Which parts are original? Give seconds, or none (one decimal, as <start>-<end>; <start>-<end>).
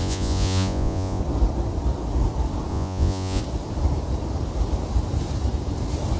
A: 1.2-2.7; 3.4-6.2